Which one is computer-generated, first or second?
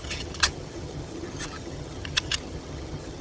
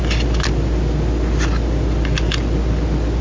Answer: first